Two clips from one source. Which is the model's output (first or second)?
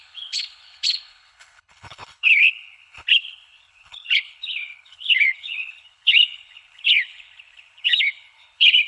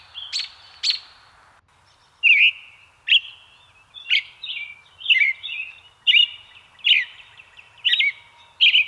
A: first